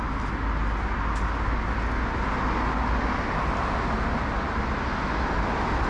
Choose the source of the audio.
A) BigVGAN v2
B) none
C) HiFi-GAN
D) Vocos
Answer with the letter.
B